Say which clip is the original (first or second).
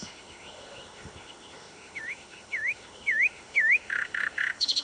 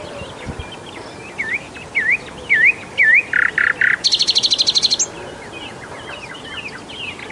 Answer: second